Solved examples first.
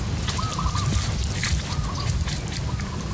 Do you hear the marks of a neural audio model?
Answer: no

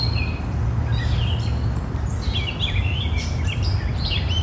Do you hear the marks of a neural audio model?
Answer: no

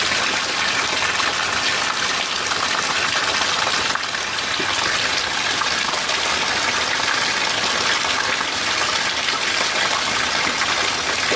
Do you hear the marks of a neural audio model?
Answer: no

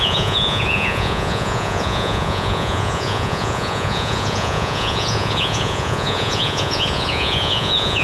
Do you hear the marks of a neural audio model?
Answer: yes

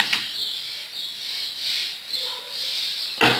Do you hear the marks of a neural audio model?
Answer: no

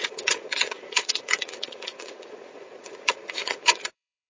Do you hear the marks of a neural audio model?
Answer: yes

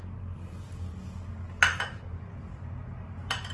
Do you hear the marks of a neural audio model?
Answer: no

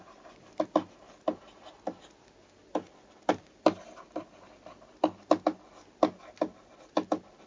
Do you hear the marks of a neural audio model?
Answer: no